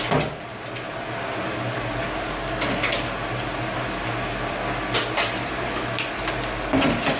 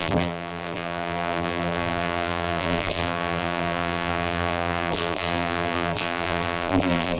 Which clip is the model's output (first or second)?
second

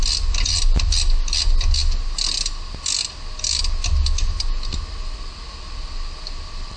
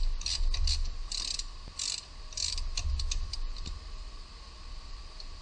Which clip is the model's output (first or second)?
second